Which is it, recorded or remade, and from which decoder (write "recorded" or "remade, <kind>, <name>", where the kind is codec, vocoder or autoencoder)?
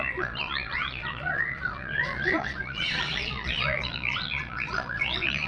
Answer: remade, vocoder, Vocos